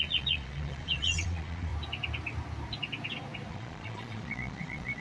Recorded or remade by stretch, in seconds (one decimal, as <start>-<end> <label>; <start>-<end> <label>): 0.0-1.7 remade; 1.7-3.5 recorded; 3.5-5.0 remade